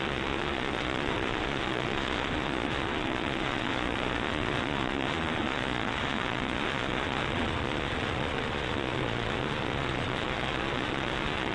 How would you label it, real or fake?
fake